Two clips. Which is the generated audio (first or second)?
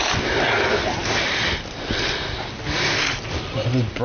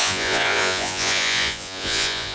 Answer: second